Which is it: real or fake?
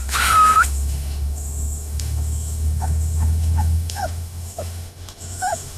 fake